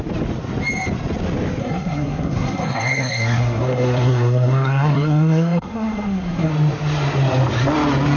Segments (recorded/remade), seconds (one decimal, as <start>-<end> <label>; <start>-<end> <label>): 0.0-1.6 recorded; 1.6-6.5 remade; 6.5-8.2 recorded